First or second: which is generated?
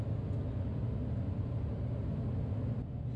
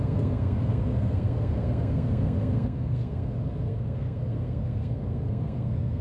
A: second